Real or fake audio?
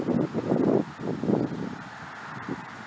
real